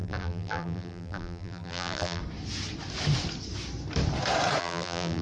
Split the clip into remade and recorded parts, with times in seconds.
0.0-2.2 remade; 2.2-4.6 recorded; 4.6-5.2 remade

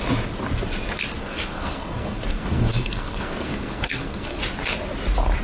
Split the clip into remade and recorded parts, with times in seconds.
0.0-1.2 recorded; 1.2-4.4 remade; 4.4-5.4 recorded

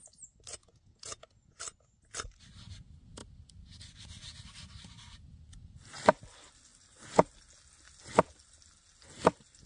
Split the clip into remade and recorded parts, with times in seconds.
0.0-0.6 recorded; 0.6-1.6 remade; 1.6-9.7 recorded

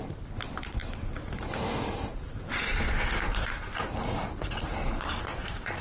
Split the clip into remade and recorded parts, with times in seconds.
0.0-0.8 recorded; 0.8-1.5 remade; 1.5-2.1 recorded; 2.1-5.8 remade

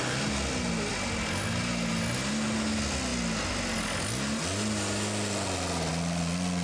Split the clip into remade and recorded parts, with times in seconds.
0.0-6.6 recorded

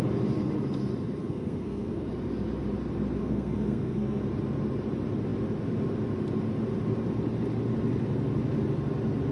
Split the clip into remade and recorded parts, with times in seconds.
0.0-1.2 recorded; 1.2-2.1 remade; 2.1-3.2 recorded; 3.2-4.2 remade; 4.2-9.3 recorded

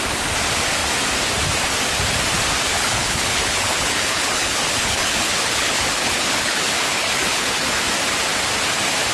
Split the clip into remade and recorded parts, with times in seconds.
0.0-2.7 recorded; 2.7-7.8 remade; 7.8-9.1 recorded

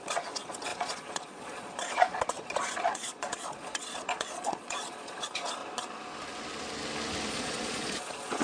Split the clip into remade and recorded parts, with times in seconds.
0.0-5.6 remade; 5.6-7.3 recorded; 7.3-8.4 remade